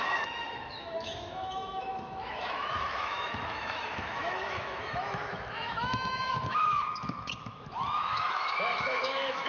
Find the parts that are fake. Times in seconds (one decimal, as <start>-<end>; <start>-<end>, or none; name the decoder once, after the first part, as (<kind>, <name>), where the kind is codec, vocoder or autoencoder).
0.0-9.5 (autoencoder, DAC-VAE)